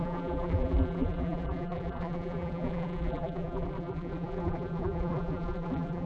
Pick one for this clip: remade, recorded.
remade